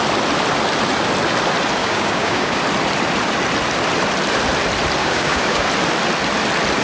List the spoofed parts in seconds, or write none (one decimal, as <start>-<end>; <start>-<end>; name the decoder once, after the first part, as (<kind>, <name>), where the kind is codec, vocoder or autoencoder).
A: 1.8-2.6 (codec, DAC); 5.0-5.7